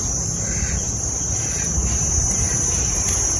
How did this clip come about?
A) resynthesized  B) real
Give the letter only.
A